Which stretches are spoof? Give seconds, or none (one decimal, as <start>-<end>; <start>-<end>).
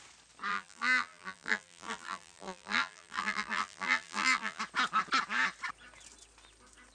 0.5-4.6